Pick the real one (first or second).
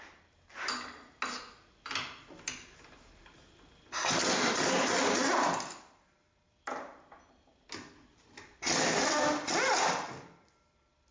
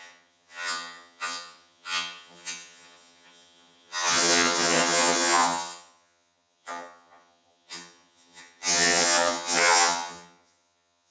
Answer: first